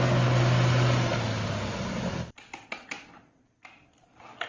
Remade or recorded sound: recorded